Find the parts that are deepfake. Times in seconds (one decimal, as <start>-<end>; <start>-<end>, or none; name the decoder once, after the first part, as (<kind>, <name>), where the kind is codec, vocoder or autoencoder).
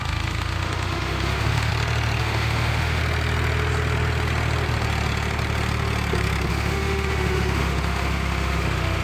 0.0-1.7 (autoencoder, DAC-VAE); 2.2-3.0; 6.5-9.0